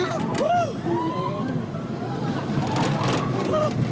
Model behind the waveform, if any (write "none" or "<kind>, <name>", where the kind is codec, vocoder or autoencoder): none